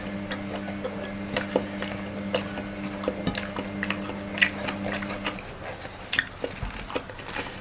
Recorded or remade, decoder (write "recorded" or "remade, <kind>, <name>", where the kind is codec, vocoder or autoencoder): recorded